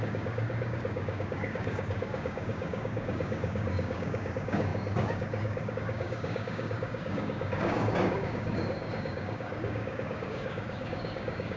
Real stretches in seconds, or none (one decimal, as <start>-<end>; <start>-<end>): none